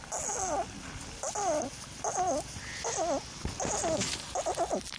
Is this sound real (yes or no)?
yes